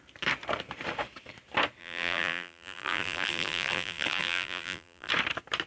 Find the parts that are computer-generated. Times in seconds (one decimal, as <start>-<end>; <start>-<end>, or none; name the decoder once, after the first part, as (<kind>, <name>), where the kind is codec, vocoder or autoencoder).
1.8-5.1 (vocoder, BigVGAN v2)